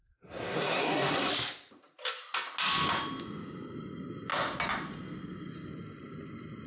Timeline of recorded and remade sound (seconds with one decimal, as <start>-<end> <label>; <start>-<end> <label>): 0.0-1.3 remade; 1.3-6.7 recorded